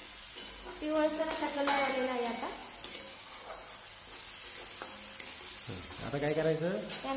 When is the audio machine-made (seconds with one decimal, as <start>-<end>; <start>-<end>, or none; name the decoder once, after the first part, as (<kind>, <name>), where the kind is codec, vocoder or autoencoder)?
0.0-0.5 (vocoder, Vocos); 1.1-1.9